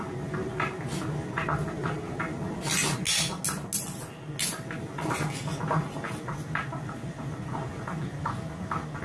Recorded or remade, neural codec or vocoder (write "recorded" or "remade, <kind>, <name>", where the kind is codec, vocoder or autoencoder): recorded